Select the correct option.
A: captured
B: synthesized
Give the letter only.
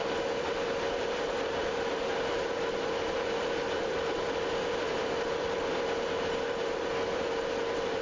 B